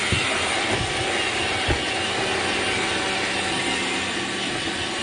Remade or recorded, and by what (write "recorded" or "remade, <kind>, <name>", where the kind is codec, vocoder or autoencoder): recorded